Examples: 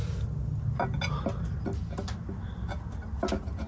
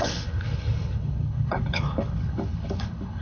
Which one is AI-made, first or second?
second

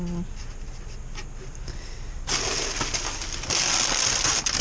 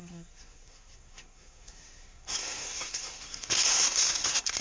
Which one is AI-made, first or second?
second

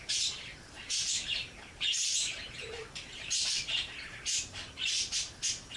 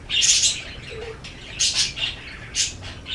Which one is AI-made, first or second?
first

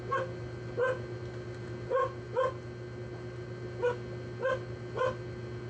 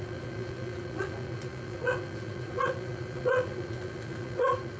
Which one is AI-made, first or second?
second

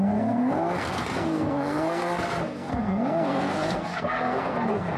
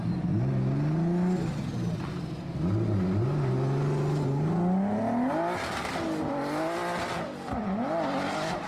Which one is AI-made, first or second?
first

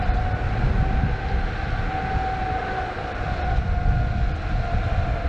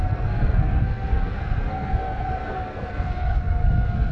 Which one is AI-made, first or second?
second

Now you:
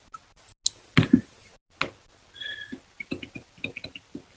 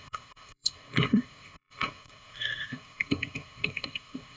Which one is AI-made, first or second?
second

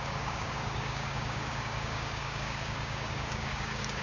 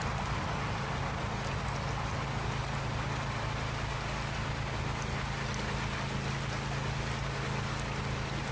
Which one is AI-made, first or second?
first